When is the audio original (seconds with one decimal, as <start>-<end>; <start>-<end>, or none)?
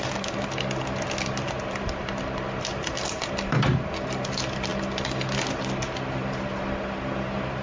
0.0-7.6